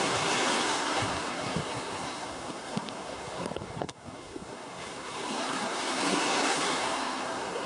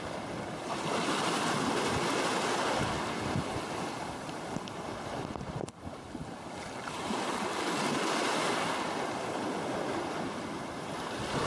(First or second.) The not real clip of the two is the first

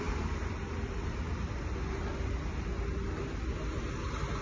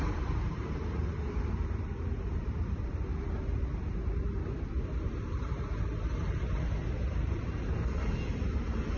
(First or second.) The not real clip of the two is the second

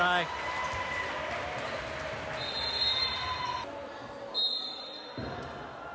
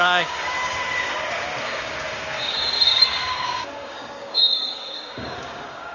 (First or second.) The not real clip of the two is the second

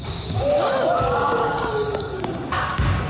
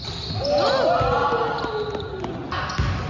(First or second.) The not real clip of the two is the first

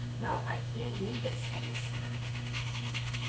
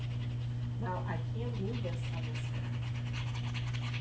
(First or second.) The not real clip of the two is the first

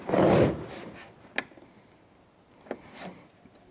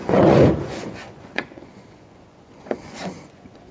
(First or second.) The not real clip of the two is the second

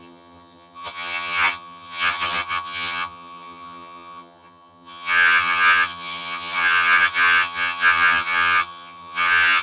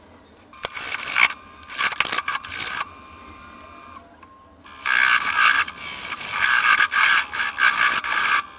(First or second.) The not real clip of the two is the first